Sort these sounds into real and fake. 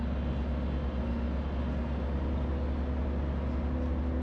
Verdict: real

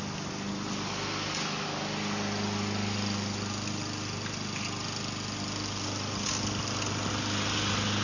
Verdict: real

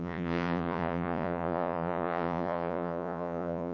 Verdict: fake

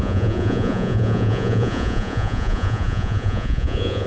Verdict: fake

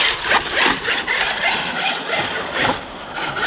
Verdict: real